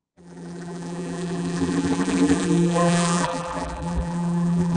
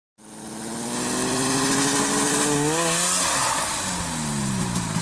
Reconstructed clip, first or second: first